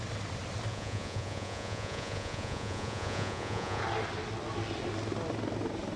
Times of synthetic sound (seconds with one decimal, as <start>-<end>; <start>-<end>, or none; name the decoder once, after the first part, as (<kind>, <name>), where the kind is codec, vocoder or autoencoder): 0.7-3.8 (vocoder, Vocos)